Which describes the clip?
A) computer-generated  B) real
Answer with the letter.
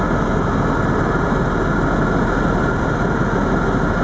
B